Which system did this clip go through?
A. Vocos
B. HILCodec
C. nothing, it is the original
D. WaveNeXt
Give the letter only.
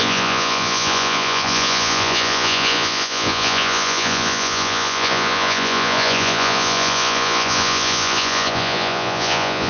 A